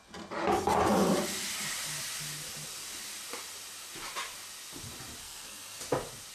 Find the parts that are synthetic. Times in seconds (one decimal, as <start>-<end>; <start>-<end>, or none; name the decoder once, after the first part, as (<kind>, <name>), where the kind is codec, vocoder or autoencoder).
5.2-5.8 (codec, SNAC)